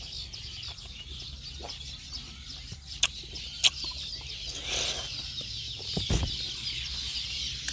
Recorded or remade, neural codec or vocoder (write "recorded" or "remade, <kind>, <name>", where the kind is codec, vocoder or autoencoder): recorded